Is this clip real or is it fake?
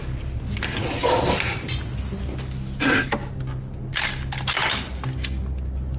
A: real